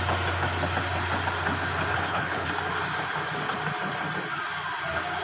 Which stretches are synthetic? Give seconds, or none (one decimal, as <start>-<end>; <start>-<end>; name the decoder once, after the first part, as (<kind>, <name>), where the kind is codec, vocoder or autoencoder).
1.9-2.5 (codec, HILCodec)